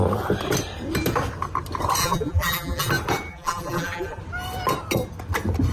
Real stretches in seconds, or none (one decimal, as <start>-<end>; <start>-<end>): 0.0-2.0; 2.9-3.3; 4.2-5.7